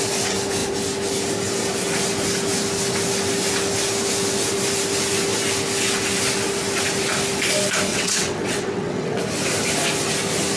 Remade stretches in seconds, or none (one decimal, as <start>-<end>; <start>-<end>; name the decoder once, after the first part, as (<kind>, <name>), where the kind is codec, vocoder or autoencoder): 7.9-9.2 (vocoder, WaveNeXt)